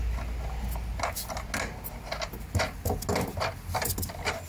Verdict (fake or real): real